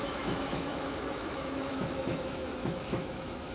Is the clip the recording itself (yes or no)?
no